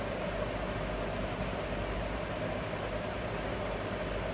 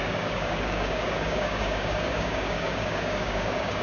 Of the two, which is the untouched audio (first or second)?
first